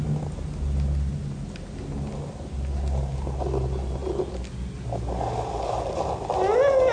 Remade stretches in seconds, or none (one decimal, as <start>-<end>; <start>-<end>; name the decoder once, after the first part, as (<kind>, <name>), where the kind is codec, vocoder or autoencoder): none